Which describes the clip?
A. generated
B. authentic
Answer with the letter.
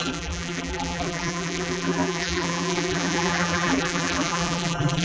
A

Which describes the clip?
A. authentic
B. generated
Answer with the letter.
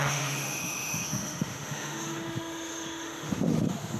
B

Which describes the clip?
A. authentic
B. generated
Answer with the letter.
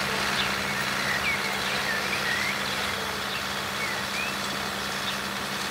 A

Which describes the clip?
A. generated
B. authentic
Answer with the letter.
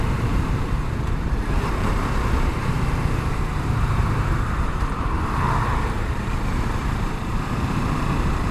A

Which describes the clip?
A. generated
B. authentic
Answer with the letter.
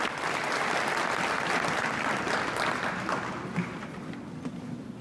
B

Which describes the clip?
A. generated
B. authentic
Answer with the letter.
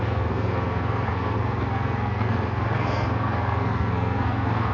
A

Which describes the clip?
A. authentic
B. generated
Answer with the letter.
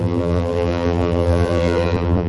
B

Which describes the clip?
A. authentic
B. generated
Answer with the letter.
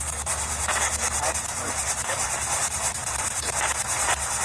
A